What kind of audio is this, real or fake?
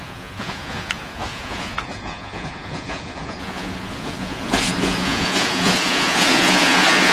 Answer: fake